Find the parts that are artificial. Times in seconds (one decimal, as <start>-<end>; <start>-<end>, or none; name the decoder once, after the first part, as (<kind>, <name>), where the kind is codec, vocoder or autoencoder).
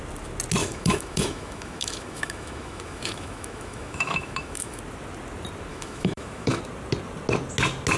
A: 0.6-4.8 (autoencoder, DAC-VAE); 5.7-6.6